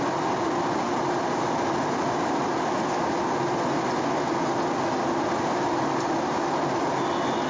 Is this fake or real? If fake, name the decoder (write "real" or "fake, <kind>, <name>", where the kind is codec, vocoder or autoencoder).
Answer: real